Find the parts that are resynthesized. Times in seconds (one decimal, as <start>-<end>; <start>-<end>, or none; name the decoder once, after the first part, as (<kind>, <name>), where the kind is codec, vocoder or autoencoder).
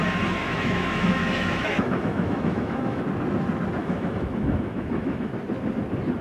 0.4-3.0 (autoencoder, DAC-VAE); 3.8-5.3